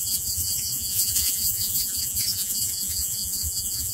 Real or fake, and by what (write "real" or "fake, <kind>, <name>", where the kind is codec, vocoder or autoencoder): fake, vocoder, Vocos